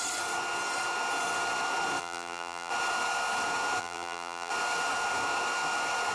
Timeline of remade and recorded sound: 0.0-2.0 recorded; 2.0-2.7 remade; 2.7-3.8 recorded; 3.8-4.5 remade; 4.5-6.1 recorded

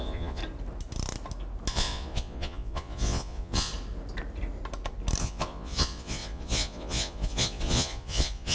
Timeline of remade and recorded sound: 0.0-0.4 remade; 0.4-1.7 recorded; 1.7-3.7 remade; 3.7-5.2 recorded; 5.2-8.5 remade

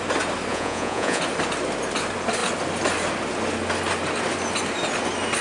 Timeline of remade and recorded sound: 0.0-0.5 recorded; 0.5-1.2 remade; 1.2-5.4 recorded